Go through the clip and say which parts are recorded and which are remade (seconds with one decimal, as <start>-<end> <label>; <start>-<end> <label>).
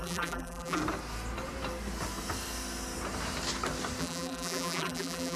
0.0-0.8 remade; 0.8-4.0 recorded; 4.0-5.4 remade